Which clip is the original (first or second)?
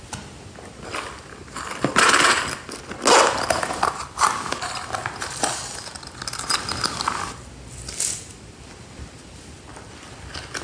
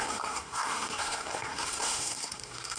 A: first